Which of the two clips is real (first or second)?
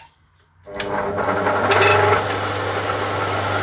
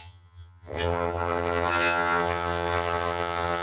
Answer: first